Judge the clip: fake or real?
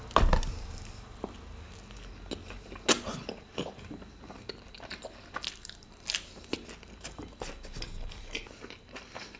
real